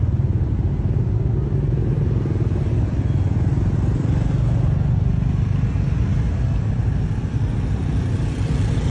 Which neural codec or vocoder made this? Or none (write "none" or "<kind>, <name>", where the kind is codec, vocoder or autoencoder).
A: none